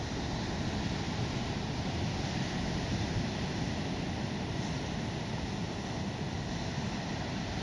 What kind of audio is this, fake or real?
real